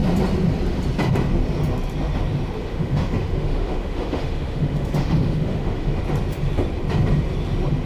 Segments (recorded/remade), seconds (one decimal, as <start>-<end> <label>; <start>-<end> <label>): 0.0-2.6 recorded; 2.6-6.0 remade; 6.0-7.9 recorded